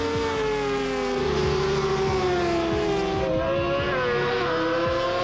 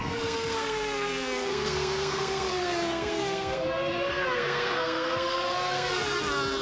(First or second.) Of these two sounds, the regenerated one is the second